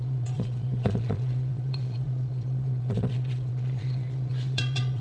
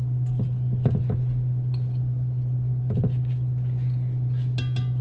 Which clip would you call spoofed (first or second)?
first